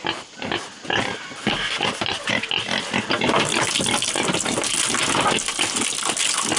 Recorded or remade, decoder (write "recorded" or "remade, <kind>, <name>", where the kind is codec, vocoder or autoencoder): recorded